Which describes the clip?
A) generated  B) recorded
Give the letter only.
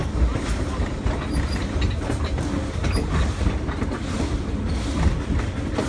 B